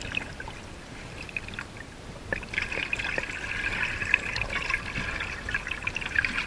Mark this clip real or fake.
real